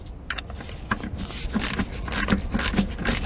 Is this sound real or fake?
real